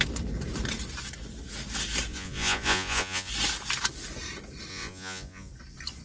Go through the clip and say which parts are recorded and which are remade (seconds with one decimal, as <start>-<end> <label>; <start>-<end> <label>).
0.0-2.1 recorded; 2.1-3.3 remade; 3.3-4.7 recorded; 4.7-5.5 remade; 5.5-6.0 recorded